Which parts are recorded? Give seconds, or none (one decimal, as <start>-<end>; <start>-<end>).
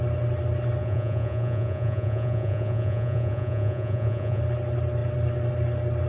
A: 0.0-0.8; 4.4-6.1